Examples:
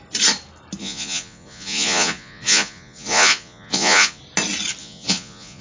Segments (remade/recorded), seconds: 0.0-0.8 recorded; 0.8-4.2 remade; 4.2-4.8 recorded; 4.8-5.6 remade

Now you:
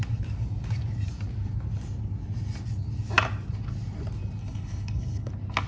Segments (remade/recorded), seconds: 0.0-4.4 recorded; 4.4-5.3 remade; 5.3-5.7 recorded

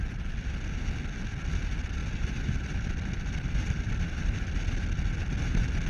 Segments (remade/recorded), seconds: 0.0-5.9 recorded

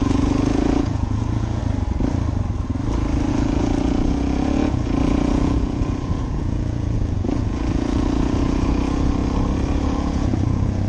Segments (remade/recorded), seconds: 0.0-1.6 remade; 1.6-3.3 recorded; 3.3-9.2 remade; 9.2-9.8 recorded; 9.8-10.9 remade

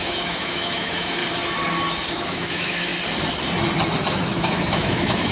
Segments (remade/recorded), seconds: 0.0-1.2 remade; 1.2-2.1 recorded; 2.1-2.9 remade; 2.9-4.1 recorded; 4.1-5.3 remade